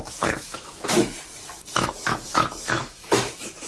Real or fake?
fake